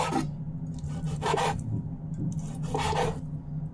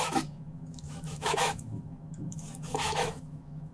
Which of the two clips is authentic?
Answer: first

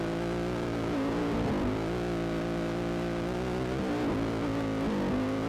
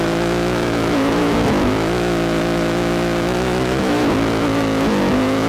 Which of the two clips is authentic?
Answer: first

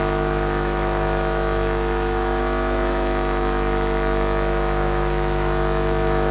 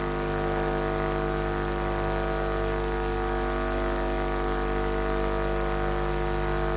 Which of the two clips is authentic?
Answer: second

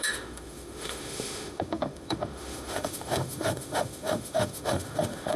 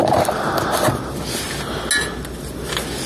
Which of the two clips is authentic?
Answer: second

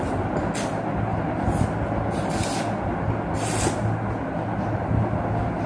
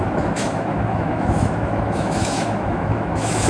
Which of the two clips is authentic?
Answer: first